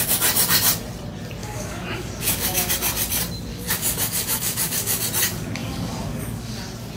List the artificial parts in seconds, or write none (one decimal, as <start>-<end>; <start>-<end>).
1.4-2.7; 3.5-5.0; 5.6-6.5

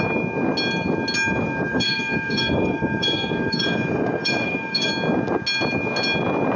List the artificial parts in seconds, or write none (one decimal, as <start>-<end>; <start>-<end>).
1.7-4.9

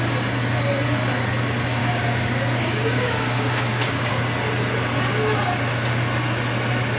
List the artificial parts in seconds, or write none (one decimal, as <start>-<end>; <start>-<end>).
1.8-4.1

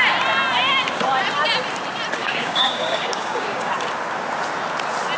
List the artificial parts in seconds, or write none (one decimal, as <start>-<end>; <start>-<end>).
2.2-3.7

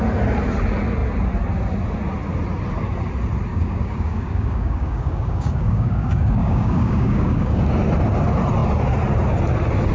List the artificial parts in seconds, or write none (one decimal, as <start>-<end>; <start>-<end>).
3.5-7.6

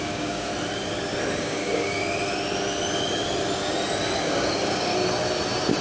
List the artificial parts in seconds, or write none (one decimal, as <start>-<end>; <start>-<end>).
0.0-0.5; 1.4-2.0; 4.2-4.9